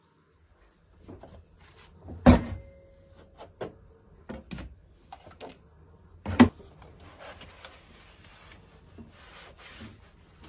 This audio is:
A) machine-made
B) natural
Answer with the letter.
B